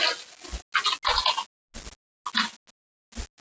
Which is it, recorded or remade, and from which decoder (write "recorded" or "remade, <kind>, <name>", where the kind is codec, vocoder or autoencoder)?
recorded